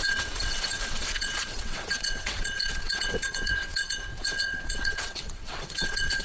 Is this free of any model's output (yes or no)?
no